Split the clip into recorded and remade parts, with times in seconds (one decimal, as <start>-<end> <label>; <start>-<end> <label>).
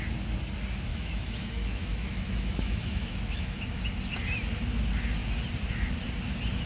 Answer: 0.0-0.9 recorded; 0.9-3.8 remade; 3.8-6.7 recorded